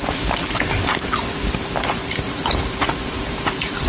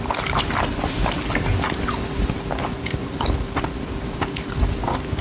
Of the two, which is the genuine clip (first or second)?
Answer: second